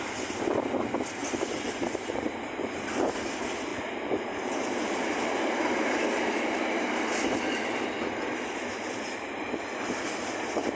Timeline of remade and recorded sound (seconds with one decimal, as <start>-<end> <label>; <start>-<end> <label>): 0.0-1.2 recorded; 1.2-2.8 remade; 2.8-3.7 recorded; 3.7-6.0 remade; 6.0-10.8 recorded

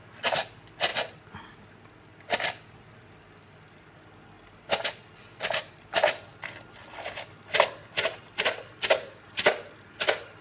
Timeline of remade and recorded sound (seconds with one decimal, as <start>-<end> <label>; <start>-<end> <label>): 0.0-10.4 recorded

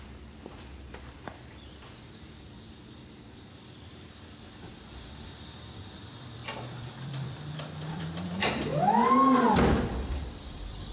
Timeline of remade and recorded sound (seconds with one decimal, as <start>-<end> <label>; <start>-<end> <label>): 0.0-8.7 remade; 8.7-10.0 recorded; 10.0-10.9 remade